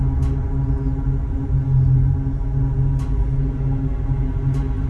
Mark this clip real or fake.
real